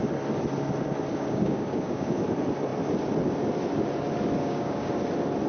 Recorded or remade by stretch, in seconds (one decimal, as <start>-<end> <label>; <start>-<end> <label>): 0.0-1.1 recorded; 1.1-2.2 remade; 2.2-4.4 recorded; 4.4-4.9 remade; 4.9-5.5 recorded